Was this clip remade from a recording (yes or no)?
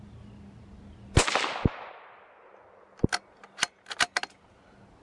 no